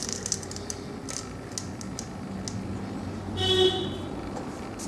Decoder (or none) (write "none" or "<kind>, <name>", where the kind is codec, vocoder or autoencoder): none